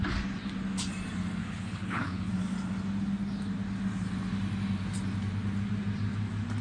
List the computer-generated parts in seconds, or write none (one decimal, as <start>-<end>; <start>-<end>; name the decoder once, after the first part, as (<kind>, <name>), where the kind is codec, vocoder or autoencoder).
1.4-2.3 (codec, HILCodec)